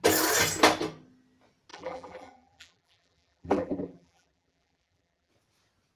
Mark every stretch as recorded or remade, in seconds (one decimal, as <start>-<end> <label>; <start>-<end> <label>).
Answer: 0.0-1.7 recorded; 1.7-5.3 remade; 5.3-6.0 recorded